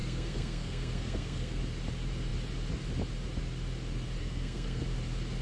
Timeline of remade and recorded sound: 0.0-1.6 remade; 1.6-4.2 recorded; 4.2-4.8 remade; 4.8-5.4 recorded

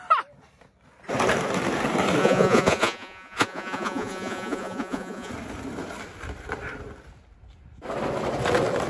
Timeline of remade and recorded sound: 0.0-2.2 recorded; 2.2-5.3 remade; 5.3-8.9 recorded

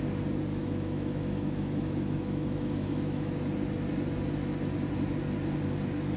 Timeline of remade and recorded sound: 0.0-0.5 recorded; 0.5-3.3 remade; 3.3-6.2 recorded